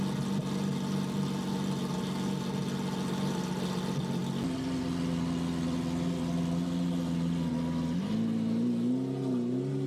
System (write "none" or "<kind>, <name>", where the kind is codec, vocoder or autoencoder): none